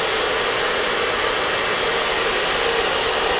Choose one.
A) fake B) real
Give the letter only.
B